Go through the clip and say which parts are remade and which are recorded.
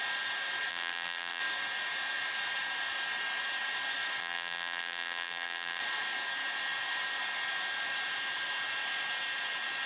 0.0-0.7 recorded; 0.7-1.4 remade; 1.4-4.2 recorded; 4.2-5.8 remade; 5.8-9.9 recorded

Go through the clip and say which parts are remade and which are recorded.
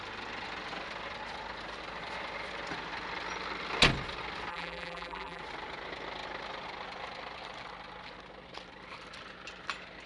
0.0-4.5 recorded; 4.5-5.4 remade; 5.4-10.1 recorded